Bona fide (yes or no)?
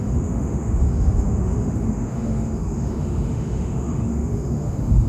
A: no